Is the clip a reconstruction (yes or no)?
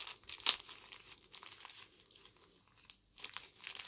no